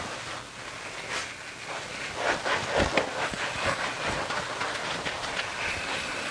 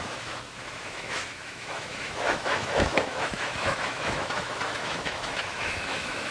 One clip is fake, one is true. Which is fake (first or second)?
second